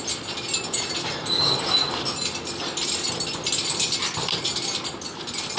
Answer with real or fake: real